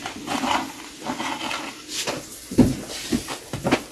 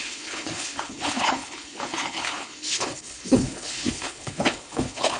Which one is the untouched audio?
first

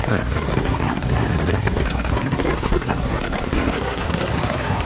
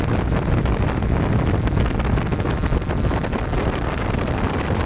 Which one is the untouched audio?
second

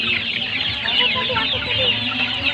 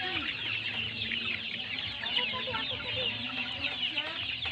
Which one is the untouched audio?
first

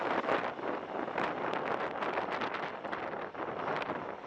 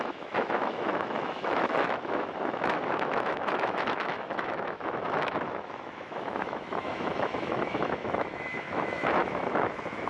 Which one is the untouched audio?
first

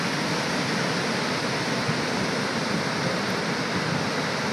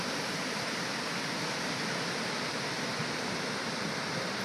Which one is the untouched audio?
first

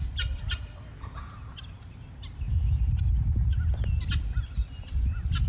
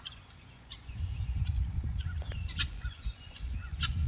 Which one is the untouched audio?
first